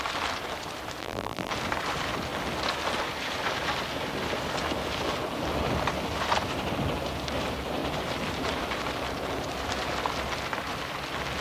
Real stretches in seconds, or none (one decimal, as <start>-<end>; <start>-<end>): 0.0-1.0; 1.5-11.4